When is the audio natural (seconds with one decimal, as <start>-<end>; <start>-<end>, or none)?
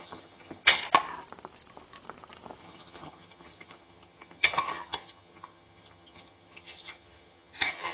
0.8-2.6